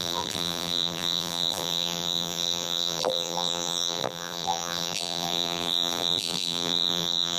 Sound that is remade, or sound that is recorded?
remade